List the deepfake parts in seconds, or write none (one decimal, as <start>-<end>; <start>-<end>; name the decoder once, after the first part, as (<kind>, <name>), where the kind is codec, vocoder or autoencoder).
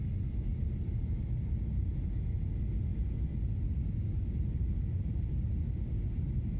0.5-1.6 (vocoder, BigVGAN v2); 2.9-3.8